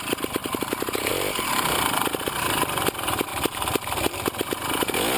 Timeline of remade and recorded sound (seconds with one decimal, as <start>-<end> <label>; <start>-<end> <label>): 0.0-3.3 remade; 3.3-5.2 recorded